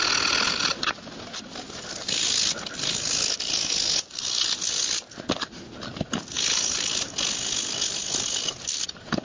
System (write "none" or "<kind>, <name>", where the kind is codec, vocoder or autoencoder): none